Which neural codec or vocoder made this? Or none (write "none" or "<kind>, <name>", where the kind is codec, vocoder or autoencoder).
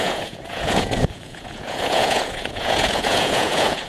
vocoder, Vocos